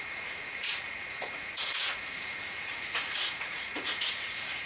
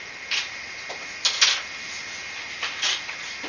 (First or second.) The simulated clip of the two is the first